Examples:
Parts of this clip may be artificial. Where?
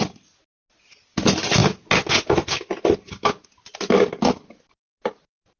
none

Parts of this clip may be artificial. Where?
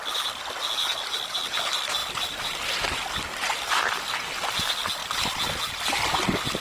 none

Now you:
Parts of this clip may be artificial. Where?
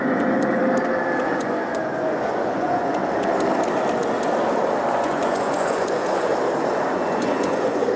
0.0-0.6 (vocoder, Vocos); 1.2-3.0; 4.9-6.3; 6.9-8.0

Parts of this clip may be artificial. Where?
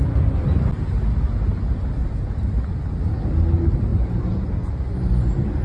2.0-3.3 (vocoder, BigVGAN v2); 3.9-5.6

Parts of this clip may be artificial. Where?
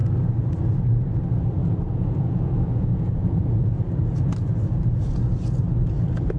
1.6-3.8 (vocoder, Vocos)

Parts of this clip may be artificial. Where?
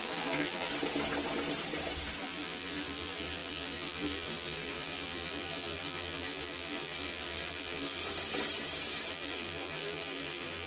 0.0-0.7 (vocoder, BigVGAN v2); 2.2-8.0; 9.1-10.7